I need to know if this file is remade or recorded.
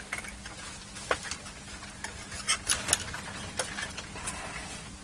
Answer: recorded